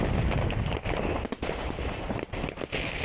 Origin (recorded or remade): recorded